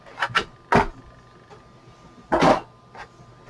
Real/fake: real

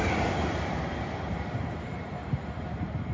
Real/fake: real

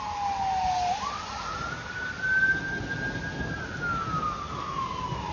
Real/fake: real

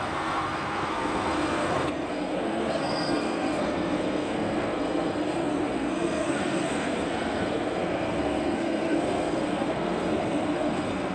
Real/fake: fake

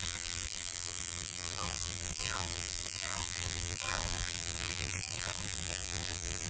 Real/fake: fake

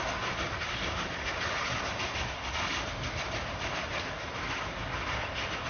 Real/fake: real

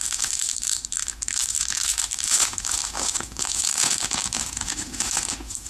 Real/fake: fake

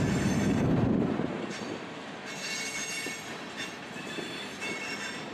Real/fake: fake